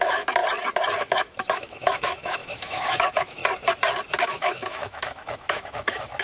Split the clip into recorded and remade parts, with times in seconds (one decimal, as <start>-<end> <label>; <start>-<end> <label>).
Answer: 0.0-0.4 remade; 0.4-1.0 recorded; 1.0-3.4 remade; 3.4-4.2 recorded; 4.2-6.2 remade

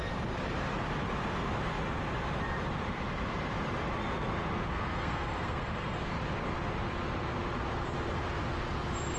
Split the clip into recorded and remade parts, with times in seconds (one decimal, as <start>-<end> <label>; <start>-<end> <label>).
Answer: 0.0-4.7 recorded; 4.7-6.0 remade; 6.0-9.2 recorded

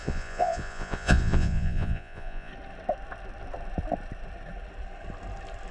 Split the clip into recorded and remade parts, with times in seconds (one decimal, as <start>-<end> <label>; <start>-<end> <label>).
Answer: 0.0-2.5 remade; 2.5-5.7 recorded